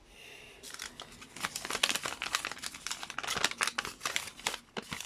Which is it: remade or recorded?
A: recorded